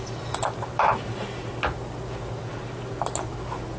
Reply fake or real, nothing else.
real